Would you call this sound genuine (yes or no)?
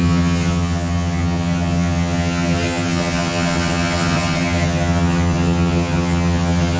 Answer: no